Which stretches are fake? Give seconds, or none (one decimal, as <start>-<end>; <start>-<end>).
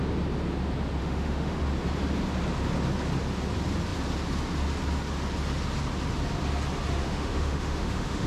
1.0-1.6; 7.0-8.3